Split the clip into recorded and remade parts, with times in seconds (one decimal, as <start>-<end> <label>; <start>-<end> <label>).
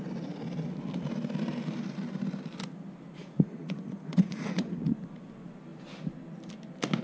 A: 0.0-3.2 recorded; 3.2-5.3 remade; 5.3-7.0 recorded